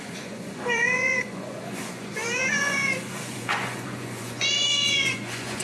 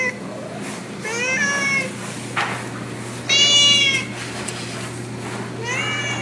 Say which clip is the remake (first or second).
first